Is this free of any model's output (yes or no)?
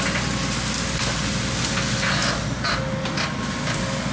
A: yes